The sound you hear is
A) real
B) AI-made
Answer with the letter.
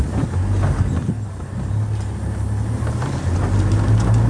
A